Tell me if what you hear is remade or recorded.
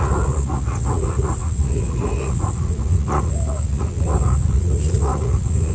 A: remade